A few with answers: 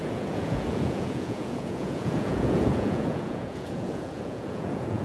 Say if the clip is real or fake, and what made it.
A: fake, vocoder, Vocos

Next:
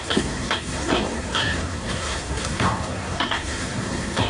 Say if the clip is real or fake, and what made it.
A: fake, codec, SNAC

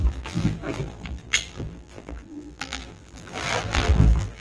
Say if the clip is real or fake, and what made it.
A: fake, vocoder, BigVGAN v2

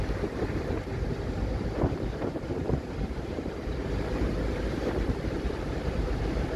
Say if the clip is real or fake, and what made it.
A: fake, vocoder, BigVGAN v2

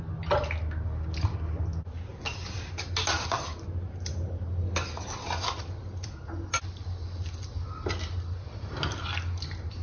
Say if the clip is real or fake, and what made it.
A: real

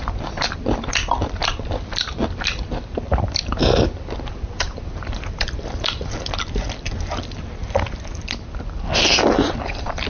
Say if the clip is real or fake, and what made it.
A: fake, vocoder, BigVGAN v2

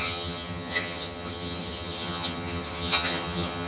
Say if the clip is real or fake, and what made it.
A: fake, vocoder, HiFi-GAN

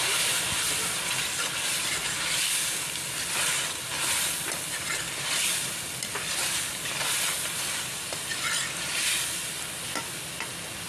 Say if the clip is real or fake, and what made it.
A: real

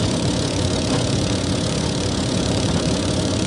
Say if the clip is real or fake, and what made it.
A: fake, vocoder, Vocos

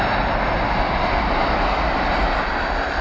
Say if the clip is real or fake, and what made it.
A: real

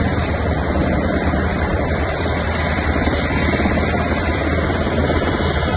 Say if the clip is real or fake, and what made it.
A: fake, vocoder, BigVGAN v2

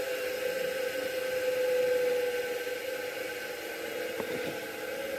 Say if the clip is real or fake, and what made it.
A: real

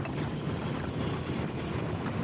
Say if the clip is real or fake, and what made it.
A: fake, vocoder, BigVGAN v2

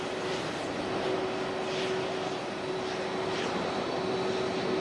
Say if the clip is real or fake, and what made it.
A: real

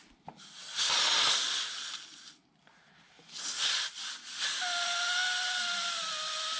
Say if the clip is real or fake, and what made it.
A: real